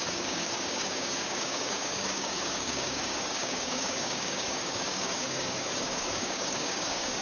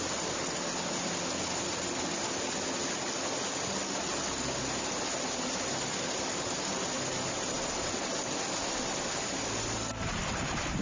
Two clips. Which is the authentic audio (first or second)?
second